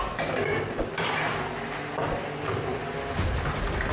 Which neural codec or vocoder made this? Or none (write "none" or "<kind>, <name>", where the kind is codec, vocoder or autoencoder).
none